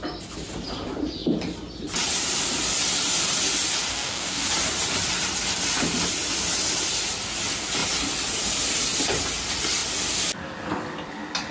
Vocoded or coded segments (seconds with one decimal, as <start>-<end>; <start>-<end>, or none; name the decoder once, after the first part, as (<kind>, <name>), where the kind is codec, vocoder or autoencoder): 3.9-4.5 (codec, DAC)